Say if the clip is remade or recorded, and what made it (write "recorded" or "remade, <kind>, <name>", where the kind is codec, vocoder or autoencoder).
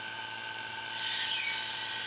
recorded